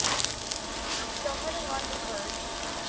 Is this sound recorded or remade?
recorded